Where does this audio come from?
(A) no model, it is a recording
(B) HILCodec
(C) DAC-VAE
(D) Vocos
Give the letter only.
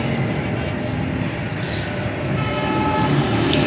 A